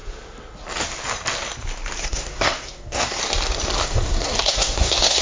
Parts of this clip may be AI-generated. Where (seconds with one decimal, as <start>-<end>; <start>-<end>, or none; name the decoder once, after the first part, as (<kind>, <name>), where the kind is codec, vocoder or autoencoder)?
2.0-3.2 (codec, SNAC); 3.8-5.2